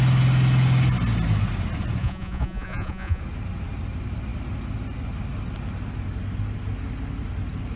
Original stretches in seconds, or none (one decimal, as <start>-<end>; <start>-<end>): 0.0-2.0; 3.2-7.8